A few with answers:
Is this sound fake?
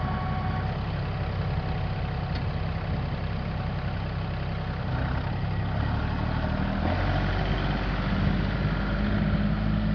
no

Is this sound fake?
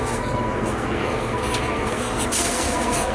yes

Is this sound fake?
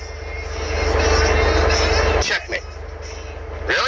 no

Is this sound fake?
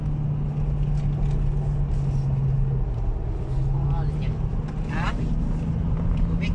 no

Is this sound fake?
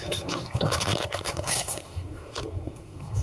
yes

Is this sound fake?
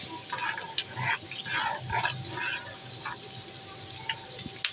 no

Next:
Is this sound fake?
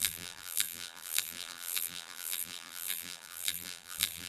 yes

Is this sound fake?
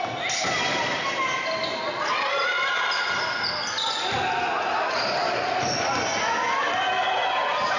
no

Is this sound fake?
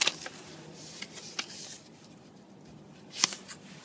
no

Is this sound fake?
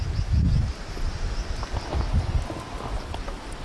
no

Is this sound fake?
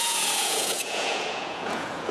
yes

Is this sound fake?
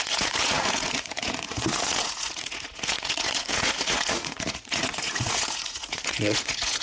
yes